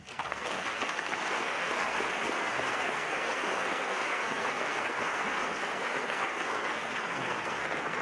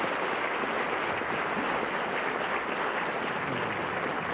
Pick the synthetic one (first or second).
first